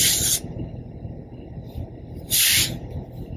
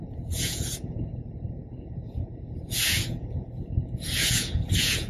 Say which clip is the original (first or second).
first